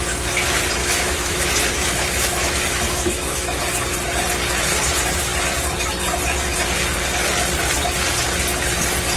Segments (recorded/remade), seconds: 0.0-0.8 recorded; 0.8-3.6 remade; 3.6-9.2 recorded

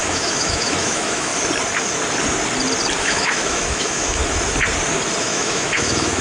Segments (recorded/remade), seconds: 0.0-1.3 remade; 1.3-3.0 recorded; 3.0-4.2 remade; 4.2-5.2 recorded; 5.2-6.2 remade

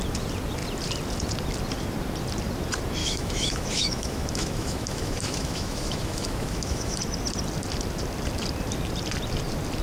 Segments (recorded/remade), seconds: 0.0-3.0 recorded; 3.0-7.0 remade; 7.0-9.8 recorded

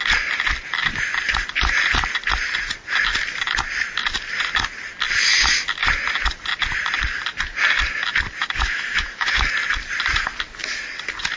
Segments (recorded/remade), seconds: 0.0-8.4 recorded; 8.4-9.5 remade; 9.5-11.4 recorded